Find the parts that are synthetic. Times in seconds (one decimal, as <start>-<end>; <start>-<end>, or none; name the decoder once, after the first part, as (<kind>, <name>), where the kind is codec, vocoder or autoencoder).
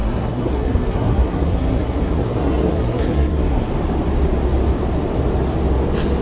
0.0-3.7 (codec, SNAC)